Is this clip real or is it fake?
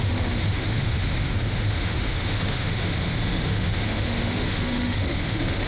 fake